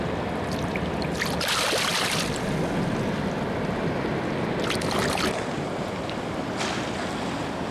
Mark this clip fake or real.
real